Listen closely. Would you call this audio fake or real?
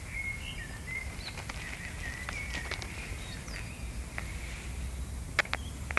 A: real